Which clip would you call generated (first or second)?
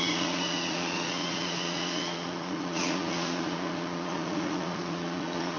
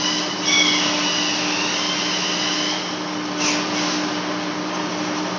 first